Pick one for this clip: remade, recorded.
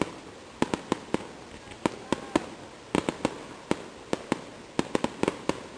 recorded